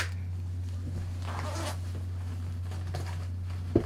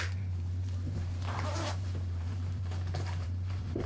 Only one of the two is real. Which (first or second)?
first